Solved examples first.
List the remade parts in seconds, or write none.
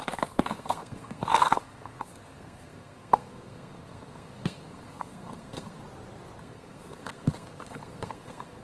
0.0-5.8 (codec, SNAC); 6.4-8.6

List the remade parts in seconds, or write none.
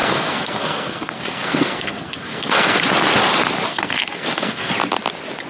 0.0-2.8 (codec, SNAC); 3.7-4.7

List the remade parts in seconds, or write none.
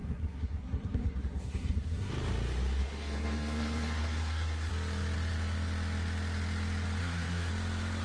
0.0-2.1 (codec, SNAC); 2.8-4.7; 7.0-7.5